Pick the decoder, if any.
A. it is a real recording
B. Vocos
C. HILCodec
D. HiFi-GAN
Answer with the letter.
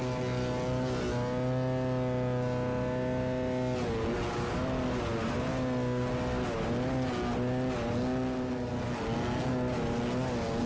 A